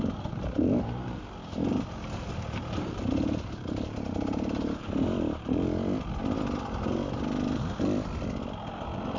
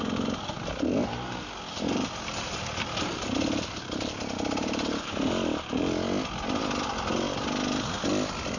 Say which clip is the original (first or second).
second